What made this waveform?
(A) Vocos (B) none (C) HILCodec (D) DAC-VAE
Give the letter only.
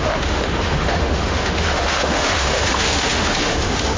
D